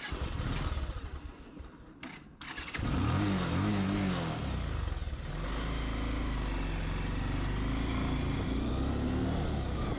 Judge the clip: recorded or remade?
recorded